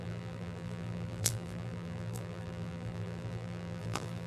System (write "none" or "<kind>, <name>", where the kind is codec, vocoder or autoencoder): vocoder, BigVGAN v2